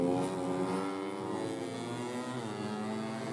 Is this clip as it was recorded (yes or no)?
yes